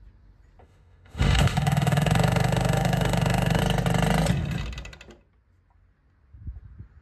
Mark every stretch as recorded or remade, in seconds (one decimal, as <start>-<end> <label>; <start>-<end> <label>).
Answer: 0.0-0.6 recorded; 0.6-3.6 remade; 3.6-7.0 recorded

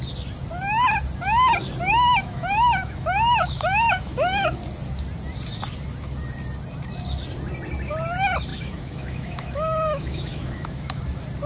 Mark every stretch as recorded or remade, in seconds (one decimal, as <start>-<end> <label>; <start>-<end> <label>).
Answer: 0.0-1.9 recorded; 1.9-4.6 remade; 4.6-8.5 recorded; 8.5-11.0 remade; 11.0-11.5 recorded

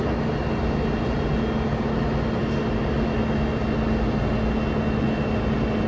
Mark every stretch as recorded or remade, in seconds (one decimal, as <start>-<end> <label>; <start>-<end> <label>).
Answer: 0.0-5.9 recorded

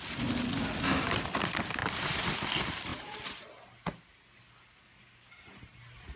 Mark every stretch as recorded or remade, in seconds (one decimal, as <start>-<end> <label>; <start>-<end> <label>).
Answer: 0.0-6.2 recorded

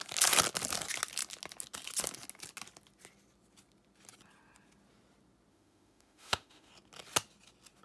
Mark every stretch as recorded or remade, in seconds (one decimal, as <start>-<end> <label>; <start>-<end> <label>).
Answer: 0.0-5.5 recorded; 5.5-6.7 remade; 6.7-7.8 recorded